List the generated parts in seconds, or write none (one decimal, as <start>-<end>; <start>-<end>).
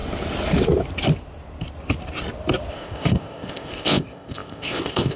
2.7-5.2